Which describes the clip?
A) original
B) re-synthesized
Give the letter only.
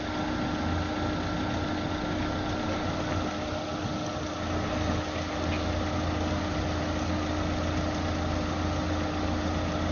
A